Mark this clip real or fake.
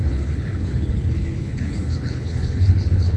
fake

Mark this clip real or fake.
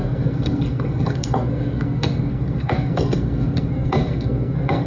fake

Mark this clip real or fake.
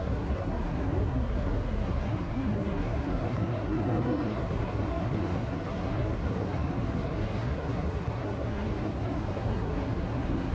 fake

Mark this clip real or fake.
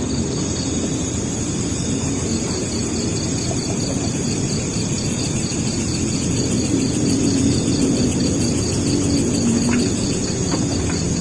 fake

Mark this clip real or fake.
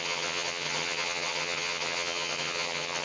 fake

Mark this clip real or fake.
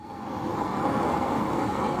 fake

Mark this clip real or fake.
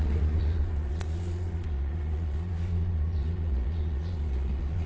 fake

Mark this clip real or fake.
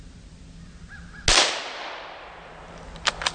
real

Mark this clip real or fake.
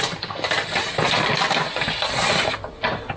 fake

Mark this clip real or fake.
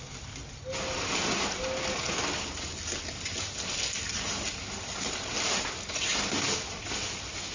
real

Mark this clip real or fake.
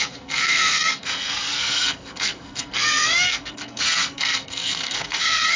fake